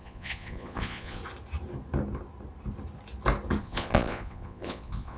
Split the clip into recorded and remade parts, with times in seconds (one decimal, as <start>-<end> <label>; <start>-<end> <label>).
0.0-1.2 remade; 1.2-3.6 recorded; 3.6-5.2 remade